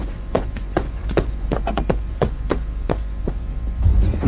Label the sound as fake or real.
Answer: fake